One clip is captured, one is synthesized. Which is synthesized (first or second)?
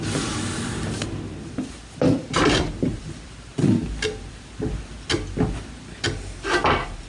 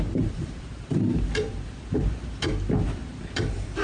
second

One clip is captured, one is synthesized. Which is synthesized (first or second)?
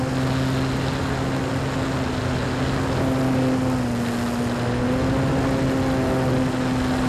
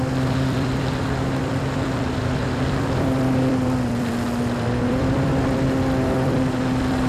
second